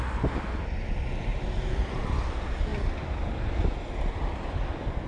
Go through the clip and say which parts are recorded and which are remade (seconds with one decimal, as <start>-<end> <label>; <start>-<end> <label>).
0.0-1.3 recorded; 1.3-2.2 remade; 2.2-2.7 recorded; 2.7-3.6 remade; 3.6-5.1 recorded